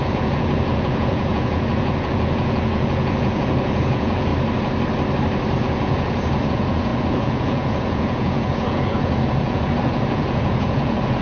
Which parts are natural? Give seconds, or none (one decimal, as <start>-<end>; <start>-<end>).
4.3-5.6

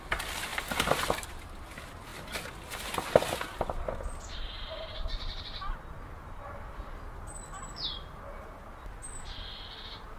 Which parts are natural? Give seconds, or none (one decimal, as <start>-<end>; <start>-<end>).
0.0-10.2

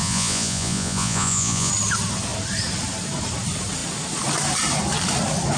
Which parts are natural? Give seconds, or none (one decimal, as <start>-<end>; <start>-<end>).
1.7-5.6